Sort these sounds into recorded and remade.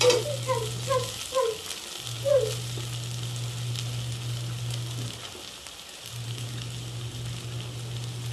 recorded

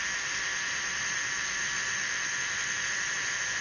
recorded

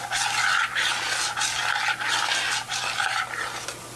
recorded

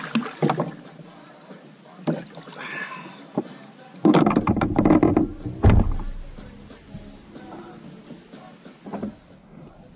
recorded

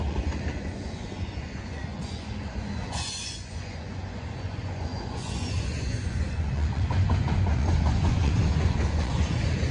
remade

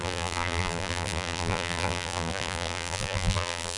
remade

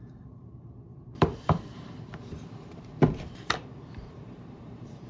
remade